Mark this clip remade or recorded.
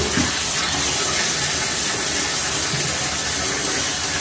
recorded